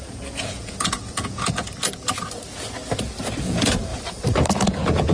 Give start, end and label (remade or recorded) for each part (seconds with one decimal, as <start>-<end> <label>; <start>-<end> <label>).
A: 0.0-1.6 remade; 1.6-3.4 recorded; 3.4-3.9 remade; 3.9-4.5 recorded; 4.5-5.1 remade